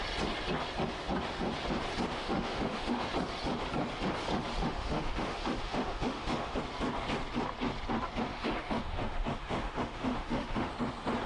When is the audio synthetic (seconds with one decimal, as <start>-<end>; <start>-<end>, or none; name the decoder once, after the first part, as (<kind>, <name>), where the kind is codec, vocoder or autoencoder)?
2.1-3.0 (autoencoder, DAC-VAE); 4.6-6.6; 8.3-10.7